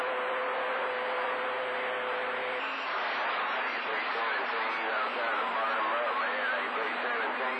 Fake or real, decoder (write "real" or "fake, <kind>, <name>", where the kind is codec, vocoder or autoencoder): real